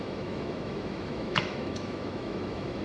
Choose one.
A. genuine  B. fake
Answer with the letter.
B